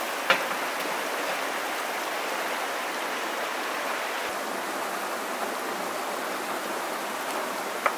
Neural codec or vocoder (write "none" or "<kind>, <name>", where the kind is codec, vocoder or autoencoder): none